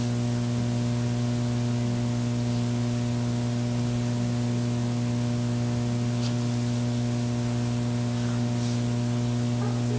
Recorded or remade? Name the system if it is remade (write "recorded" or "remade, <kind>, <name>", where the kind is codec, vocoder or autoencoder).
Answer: recorded